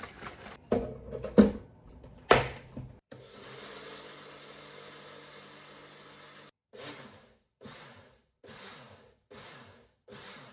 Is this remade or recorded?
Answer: recorded